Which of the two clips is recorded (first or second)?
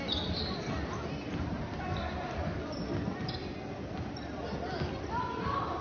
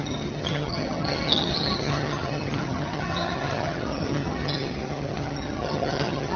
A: first